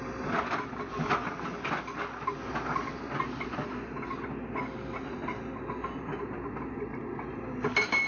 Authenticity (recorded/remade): recorded